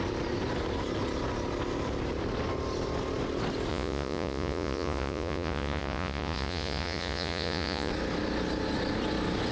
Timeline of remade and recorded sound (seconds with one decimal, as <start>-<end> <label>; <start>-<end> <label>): 0.0-3.7 recorded; 3.7-7.9 remade; 7.9-9.5 recorded